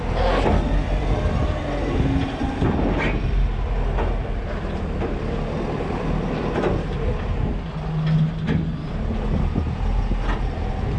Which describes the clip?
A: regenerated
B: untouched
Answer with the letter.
B